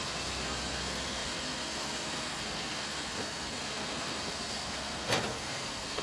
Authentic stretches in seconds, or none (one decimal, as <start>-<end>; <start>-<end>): none